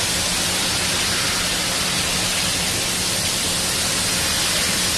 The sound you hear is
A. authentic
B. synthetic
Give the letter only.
A